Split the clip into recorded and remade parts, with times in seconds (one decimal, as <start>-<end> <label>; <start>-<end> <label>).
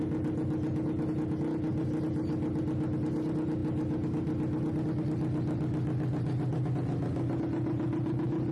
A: 0.0-8.5 recorded